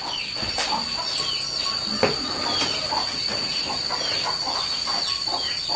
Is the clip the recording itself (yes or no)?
yes